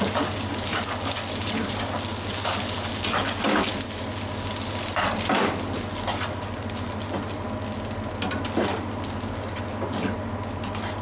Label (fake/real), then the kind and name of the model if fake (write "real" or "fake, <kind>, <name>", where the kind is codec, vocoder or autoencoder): real